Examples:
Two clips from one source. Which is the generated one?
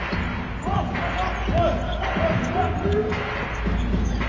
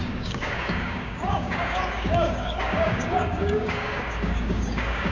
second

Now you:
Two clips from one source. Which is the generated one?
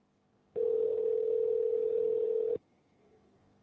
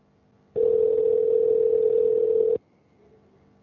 first